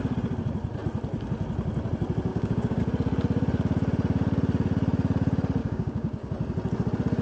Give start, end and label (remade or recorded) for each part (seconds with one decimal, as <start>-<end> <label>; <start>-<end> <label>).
0.0-2.3 recorded; 2.3-2.8 remade; 2.8-5.6 recorded; 5.6-6.3 remade; 6.3-7.2 recorded